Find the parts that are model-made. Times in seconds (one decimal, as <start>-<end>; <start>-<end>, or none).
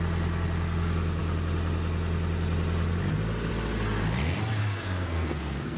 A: 4.6-5.8